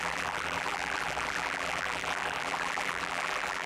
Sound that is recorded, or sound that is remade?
remade